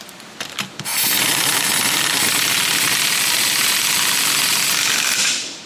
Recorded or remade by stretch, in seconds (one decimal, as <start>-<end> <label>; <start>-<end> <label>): 0.0-5.7 recorded